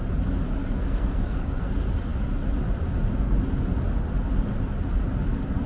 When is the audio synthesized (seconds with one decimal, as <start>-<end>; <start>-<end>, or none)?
0.6-1.7